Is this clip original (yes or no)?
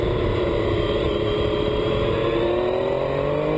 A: yes